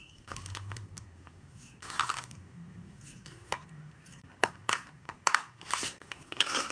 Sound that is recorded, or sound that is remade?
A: remade